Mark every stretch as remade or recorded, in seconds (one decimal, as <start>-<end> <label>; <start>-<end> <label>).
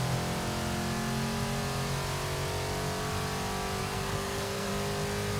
0.0-3.8 recorded; 3.8-4.7 remade; 4.7-5.4 recorded